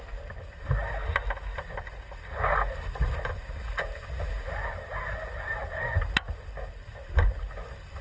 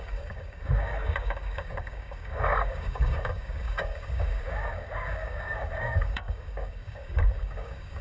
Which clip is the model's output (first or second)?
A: second